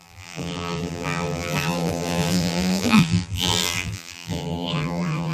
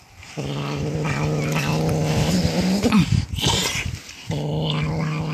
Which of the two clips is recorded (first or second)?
second